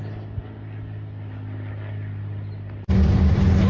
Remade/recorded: recorded